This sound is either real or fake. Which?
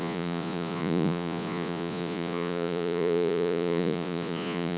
fake